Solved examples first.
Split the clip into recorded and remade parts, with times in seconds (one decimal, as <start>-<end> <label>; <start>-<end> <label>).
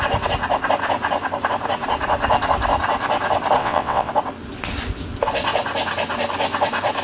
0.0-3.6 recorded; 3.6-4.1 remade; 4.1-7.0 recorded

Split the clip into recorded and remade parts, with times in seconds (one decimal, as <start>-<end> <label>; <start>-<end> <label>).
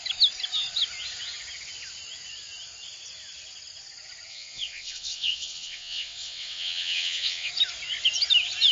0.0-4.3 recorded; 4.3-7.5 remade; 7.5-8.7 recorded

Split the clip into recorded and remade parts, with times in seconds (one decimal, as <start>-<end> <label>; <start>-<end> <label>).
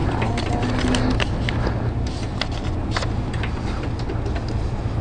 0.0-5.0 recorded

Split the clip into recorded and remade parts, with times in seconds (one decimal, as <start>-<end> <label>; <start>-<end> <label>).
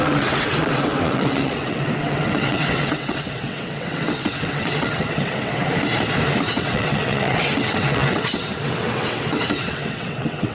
0.0-5.6 remade; 5.6-6.5 recorded; 6.5-10.5 remade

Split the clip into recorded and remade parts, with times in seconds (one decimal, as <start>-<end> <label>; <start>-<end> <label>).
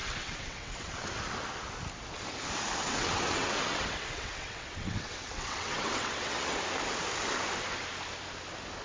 0.0-1.1 remade; 1.1-2.9 recorded; 2.9-6.6 remade; 6.6-8.8 recorded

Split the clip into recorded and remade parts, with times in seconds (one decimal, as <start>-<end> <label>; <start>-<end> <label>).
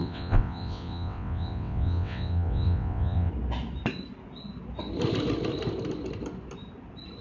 0.0-3.3 remade; 3.3-7.2 recorded